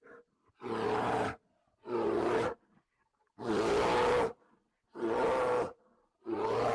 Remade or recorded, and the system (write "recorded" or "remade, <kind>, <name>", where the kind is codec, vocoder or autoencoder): recorded